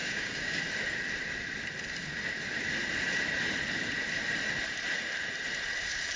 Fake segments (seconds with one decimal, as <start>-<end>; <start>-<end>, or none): 0.0-0.6